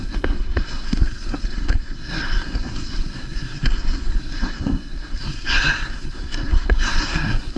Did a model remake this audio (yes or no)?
yes